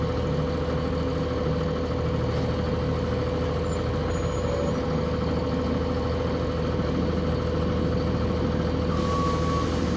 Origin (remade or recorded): recorded